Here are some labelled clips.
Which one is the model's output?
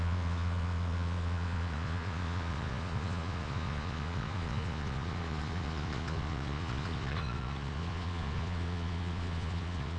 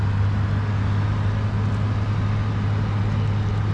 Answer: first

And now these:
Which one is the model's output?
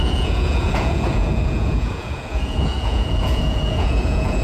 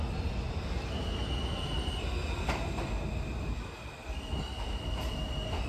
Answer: first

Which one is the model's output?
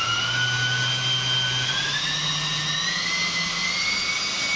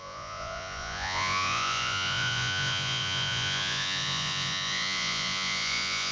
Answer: second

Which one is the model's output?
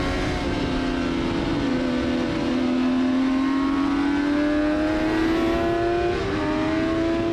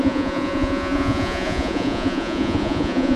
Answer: second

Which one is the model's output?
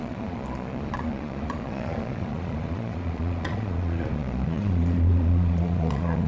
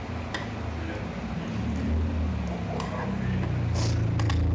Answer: first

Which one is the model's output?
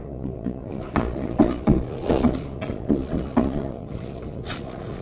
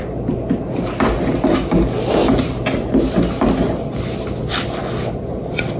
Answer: first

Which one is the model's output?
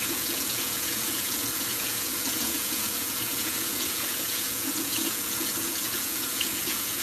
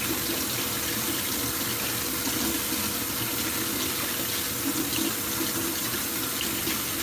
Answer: first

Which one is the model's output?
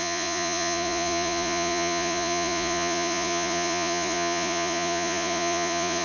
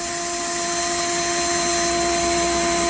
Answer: first